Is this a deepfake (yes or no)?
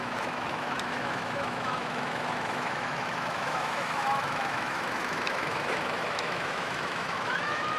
yes